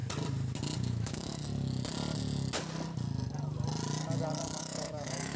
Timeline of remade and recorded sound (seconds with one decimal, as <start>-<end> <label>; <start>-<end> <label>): 0.0-0.9 recorded; 0.9-1.4 remade; 1.4-4.6 recorded; 4.6-5.4 remade